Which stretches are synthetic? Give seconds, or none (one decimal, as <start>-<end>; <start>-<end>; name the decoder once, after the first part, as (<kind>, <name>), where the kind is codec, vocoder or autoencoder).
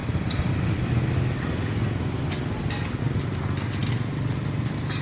none